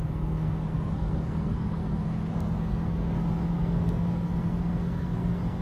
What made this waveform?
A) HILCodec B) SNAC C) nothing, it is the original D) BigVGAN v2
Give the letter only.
B